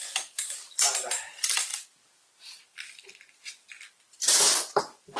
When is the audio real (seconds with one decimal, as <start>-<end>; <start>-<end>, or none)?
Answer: 1.7-4.8